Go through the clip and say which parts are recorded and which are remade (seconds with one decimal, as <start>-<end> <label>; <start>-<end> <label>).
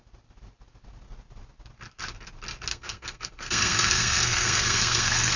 0.0-2.7 recorded; 2.7-5.4 remade